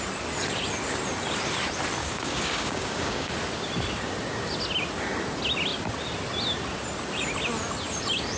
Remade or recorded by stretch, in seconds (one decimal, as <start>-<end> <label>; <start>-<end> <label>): 0.0-2.0 recorded; 2.0-3.3 remade; 3.3-8.4 recorded